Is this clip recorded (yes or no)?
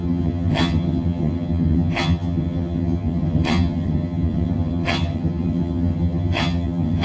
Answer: no